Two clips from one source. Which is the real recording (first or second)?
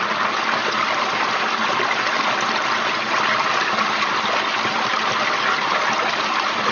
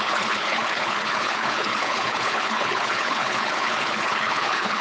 first